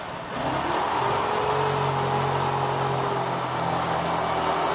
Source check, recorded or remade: recorded